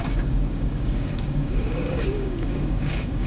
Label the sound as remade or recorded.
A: remade